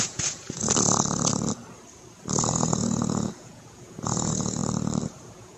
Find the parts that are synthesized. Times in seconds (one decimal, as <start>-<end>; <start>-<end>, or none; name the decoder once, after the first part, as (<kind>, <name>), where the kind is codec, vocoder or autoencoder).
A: 0.0-0.6 (vocoder, Vocos); 2.5-4.6; 5.1-5.6